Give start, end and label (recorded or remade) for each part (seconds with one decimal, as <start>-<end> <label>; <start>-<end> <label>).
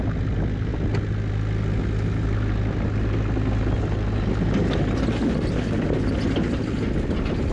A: 0.0-7.5 recorded